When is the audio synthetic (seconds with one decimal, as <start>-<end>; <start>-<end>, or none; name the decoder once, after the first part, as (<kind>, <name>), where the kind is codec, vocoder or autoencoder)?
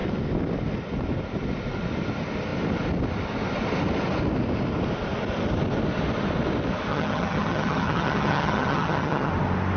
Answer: 6.9-9.3 (vocoder, HiFi-GAN)